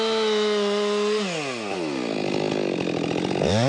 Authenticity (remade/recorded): recorded